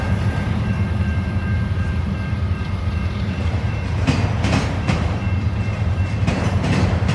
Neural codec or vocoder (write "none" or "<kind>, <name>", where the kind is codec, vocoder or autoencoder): vocoder, BigVGAN v2